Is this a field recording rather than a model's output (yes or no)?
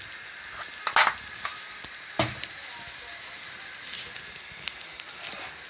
yes